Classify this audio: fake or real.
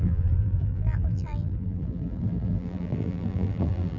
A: fake